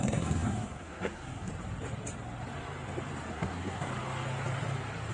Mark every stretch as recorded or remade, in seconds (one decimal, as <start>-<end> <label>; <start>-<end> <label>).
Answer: 0.0-1.5 remade; 1.5-3.3 recorded; 3.3-3.9 remade; 3.9-5.1 recorded